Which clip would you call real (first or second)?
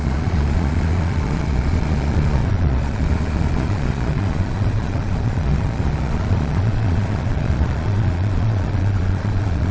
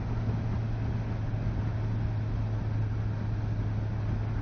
second